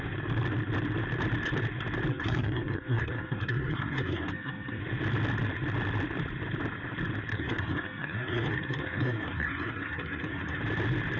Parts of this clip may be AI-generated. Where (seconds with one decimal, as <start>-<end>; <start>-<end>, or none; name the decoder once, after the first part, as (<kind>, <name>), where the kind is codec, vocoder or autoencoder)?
2.1-4.8 (codec, SNAC); 7.3-10.6